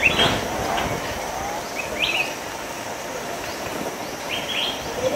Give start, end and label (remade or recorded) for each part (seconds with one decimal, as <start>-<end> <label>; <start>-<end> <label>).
0.0-3.1 recorded; 3.1-5.2 remade